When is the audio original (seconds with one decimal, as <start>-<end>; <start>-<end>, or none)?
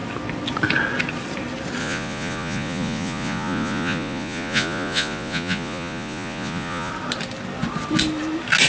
0.0-1.8; 6.9-8.7